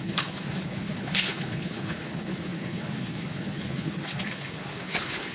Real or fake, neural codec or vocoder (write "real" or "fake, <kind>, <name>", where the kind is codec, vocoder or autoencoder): fake, codec, HILCodec